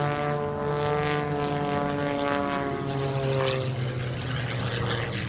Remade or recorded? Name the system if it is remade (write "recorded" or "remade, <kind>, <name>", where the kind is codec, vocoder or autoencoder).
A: recorded